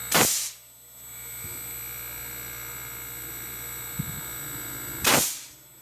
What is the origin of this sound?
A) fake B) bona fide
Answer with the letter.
B